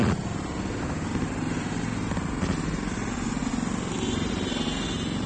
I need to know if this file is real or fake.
real